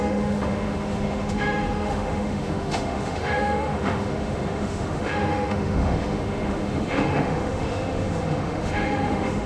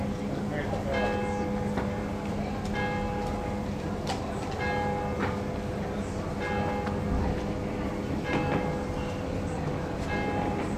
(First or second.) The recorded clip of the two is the second